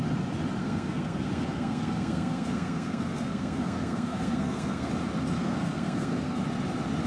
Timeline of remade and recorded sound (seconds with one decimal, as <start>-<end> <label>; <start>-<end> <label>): 0.0-0.6 recorded; 0.6-4.9 remade; 4.9-5.4 recorded; 5.4-6.4 remade; 6.4-7.1 recorded